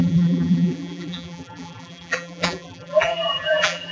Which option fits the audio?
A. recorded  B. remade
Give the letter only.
B